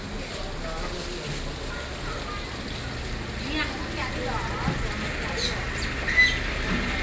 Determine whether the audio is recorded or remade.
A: recorded